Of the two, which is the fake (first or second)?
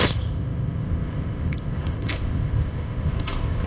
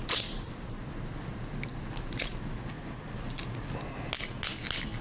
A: first